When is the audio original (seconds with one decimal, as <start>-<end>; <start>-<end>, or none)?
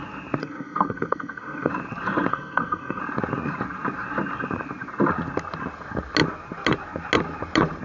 0.0-0.4; 1.7-2.3; 3.0-7.8